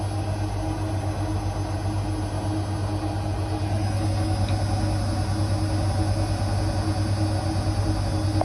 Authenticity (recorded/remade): recorded